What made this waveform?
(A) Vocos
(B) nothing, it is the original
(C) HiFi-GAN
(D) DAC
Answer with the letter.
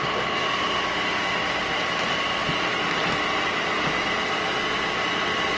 B